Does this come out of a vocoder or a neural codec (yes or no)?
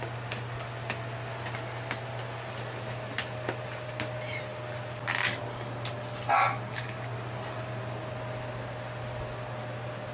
no